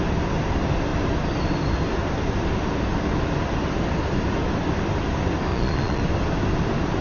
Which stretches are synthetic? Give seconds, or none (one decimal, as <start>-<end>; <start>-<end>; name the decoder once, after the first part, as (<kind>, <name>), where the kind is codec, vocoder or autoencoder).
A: 5.5-6.0 (vocoder, Vocos)